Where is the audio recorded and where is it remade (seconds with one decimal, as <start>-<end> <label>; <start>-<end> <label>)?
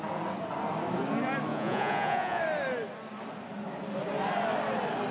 0.0-1.5 recorded; 1.5-2.4 remade; 2.4-5.1 recorded